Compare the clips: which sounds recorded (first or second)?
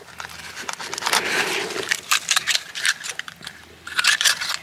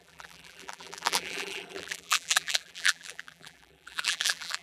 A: first